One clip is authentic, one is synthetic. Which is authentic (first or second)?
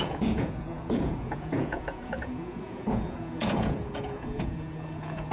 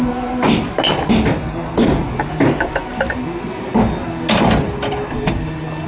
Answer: second